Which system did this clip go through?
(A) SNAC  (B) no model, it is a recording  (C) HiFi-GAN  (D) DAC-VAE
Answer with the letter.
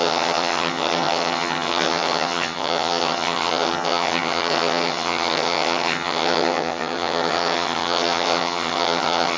C